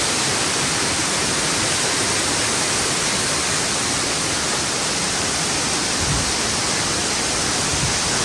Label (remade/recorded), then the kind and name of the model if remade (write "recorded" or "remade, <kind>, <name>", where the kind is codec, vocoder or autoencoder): recorded